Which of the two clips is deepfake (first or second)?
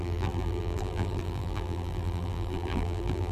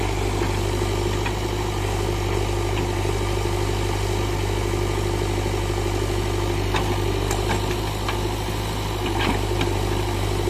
first